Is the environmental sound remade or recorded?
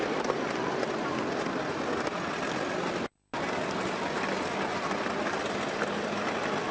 recorded